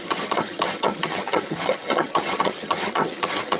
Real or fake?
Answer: fake